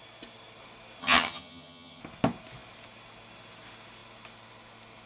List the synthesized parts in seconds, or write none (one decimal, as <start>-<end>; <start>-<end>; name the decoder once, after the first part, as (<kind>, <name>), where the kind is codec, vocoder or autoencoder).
1.0-2.0 (vocoder, HiFi-GAN)